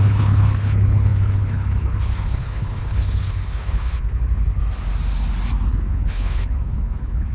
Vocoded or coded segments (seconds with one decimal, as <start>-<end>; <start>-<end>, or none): 0.0-4.6; 5.7-7.3